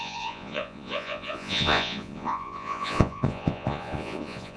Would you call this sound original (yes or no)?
no